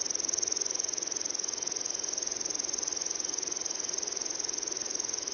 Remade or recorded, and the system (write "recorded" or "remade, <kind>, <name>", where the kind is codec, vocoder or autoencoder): recorded